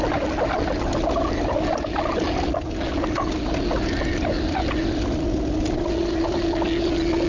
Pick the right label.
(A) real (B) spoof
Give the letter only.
A